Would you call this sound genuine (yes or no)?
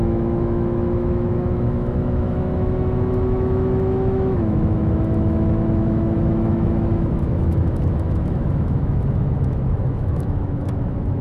no